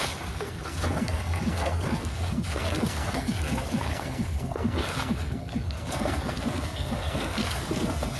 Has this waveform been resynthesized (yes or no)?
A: yes